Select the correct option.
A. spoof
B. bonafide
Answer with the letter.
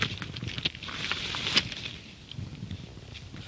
B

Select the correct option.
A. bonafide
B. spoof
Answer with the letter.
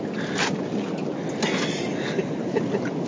A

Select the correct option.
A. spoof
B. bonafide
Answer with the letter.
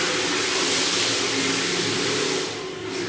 B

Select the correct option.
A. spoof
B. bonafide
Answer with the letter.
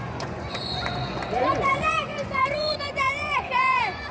A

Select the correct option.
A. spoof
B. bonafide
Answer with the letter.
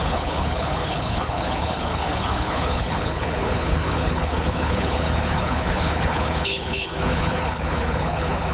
A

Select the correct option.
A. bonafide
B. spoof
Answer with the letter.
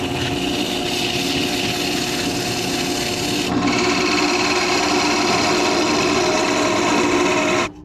A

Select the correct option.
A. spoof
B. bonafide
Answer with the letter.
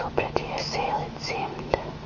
A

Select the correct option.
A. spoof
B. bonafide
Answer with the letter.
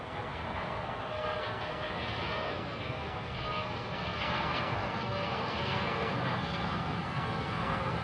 A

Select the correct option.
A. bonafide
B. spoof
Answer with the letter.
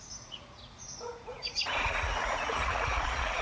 B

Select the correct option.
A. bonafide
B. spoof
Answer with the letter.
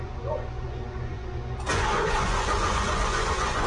B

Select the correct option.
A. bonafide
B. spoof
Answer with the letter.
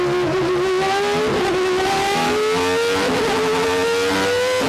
A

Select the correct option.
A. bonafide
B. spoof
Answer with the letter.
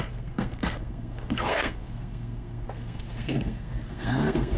B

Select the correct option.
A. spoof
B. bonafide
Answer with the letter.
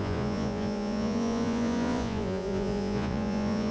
A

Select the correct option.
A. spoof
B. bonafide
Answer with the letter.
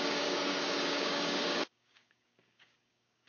A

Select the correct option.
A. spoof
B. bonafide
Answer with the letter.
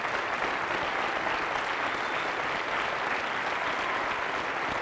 B